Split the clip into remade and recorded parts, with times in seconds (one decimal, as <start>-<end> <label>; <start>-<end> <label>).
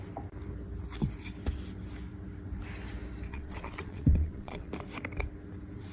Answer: 0.0-3.3 recorded; 3.3-4.7 remade; 4.7-5.9 recorded